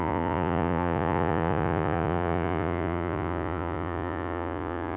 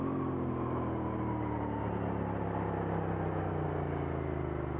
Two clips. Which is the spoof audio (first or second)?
first